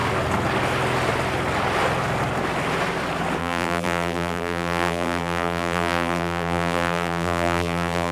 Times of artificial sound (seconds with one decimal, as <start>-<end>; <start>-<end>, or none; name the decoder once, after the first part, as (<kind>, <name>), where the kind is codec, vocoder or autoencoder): 3.4-8.1 (vocoder, BigVGAN v2)